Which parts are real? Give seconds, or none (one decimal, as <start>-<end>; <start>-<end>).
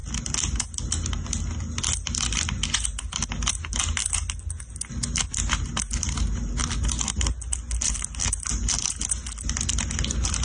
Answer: 0.0-10.4